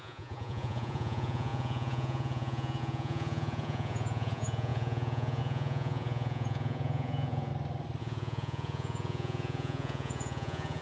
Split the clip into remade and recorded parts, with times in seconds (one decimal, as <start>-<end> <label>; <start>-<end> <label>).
0.0-7.5 remade; 7.5-8.0 recorded; 8.0-10.8 remade

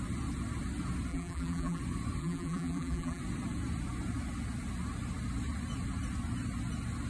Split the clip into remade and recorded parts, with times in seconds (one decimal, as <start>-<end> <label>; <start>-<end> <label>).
0.0-1.1 recorded; 1.1-1.8 remade; 1.8-2.2 recorded; 2.2-3.2 remade; 3.2-7.1 recorded

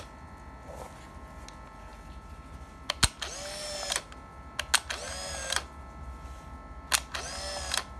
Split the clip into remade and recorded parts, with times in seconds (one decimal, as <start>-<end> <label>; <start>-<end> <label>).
0.0-8.0 recorded

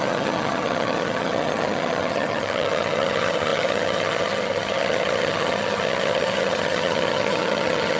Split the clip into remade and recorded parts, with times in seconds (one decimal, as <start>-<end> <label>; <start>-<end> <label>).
0.0-8.0 remade

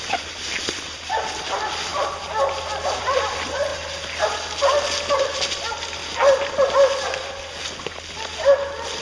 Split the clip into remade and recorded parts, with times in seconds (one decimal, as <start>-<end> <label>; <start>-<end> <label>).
0.0-1.9 remade; 1.9-3.0 recorded; 3.0-3.7 remade; 3.7-5.2 recorded; 5.2-6.0 remade; 6.0-9.0 recorded